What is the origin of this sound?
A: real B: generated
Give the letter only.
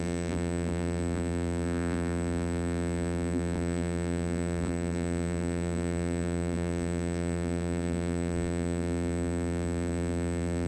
B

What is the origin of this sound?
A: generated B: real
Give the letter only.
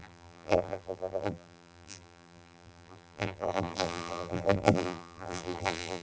A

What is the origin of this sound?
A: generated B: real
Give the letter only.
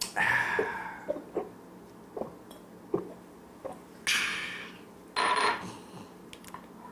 B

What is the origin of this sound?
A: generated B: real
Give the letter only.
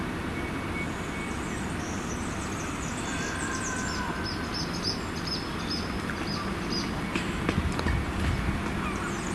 B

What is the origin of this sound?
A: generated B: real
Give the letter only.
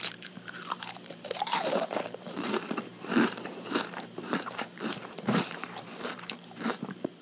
A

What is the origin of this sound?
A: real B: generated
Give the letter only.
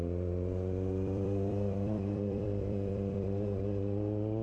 B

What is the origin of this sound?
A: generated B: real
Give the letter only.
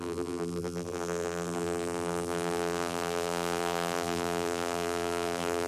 A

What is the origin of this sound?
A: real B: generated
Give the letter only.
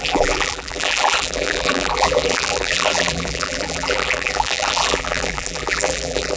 B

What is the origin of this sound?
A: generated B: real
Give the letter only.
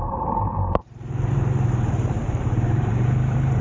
A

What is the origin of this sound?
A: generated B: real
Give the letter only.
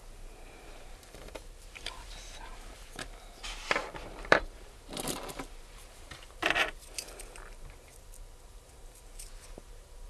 A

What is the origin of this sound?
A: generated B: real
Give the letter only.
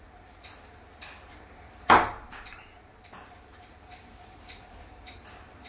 A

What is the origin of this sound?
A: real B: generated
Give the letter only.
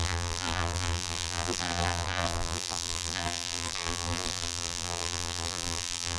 B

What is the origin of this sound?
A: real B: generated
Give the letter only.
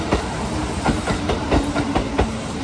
B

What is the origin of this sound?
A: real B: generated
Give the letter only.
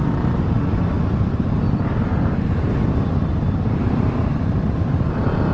A